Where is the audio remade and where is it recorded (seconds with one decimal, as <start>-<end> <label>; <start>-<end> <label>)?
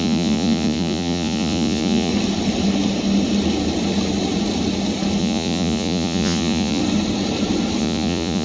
0.0-2.1 remade; 2.1-5.2 recorded; 5.2-6.8 remade; 6.8-7.8 recorded; 7.8-8.4 remade